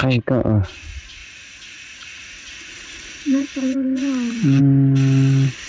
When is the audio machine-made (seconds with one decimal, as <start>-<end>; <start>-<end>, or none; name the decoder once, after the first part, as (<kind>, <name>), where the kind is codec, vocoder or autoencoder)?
1.2-4.6 (vocoder, Vocos)